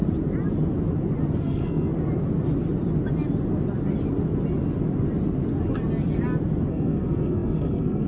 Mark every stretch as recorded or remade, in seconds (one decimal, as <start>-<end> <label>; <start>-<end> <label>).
0.0-1.4 recorded; 1.4-1.9 remade; 1.9-6.7 recorded; 6.7-8.1 remade